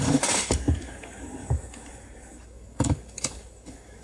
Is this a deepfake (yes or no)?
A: yes